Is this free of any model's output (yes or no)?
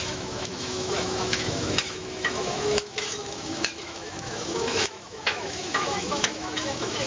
no